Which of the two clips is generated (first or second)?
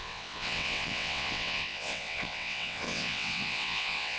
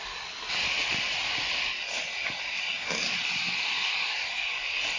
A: first